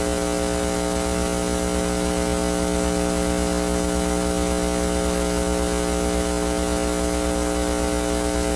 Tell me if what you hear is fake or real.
real